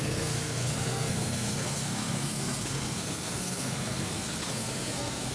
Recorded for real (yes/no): no